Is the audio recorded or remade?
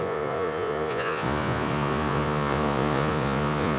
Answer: remade